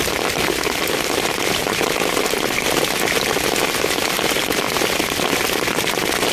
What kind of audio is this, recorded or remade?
recorded